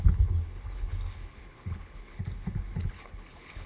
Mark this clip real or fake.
fake